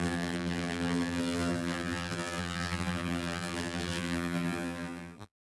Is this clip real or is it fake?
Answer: fake